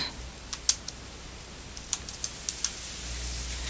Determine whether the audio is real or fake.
real